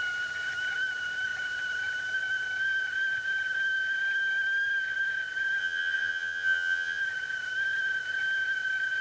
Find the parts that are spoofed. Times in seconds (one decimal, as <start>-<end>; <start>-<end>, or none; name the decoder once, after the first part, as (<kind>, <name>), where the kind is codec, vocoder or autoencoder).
5.6-7.0 (vocoder, HiFi-GAN)